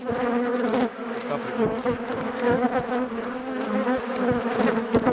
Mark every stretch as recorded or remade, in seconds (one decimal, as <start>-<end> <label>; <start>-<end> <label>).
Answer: 0.0-0.5 recorded; 0.5-3.6 remade; 3.6-5.1 recorded